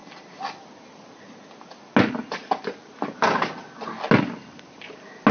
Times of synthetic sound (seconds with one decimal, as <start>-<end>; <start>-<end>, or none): none